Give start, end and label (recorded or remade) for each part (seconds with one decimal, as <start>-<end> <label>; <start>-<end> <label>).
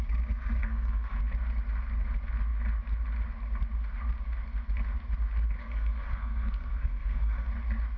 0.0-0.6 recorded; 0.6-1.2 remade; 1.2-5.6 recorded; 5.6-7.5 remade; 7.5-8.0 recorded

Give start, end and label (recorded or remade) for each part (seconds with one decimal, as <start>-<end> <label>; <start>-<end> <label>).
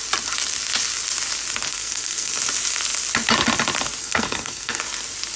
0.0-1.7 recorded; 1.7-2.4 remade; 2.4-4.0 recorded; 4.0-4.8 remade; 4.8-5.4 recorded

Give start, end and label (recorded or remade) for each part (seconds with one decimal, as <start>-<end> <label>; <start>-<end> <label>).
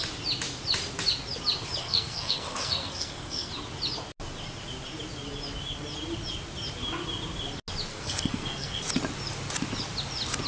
0.0-1.8 recorded; 1.8-3.5 remade; 3.5-7.9 recorded; 7.9-8.8 remade; 8.8-10.5 recorded